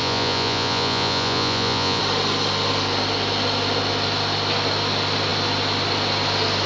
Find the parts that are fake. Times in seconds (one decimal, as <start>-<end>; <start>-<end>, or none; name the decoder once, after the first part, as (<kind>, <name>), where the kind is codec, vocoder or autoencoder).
0.0-2.0 (vocoder, Vocos)